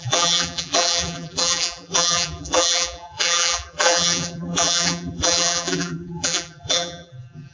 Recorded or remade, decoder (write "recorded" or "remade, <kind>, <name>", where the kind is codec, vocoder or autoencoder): remade, vocoder, BigVGAN v2